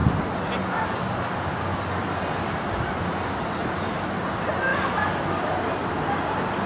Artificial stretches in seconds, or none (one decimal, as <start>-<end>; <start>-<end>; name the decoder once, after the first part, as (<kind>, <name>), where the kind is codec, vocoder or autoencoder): 3.6-4.2 (vocoder, BigVGAN v2)